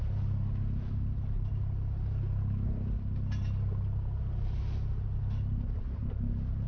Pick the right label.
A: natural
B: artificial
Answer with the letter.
A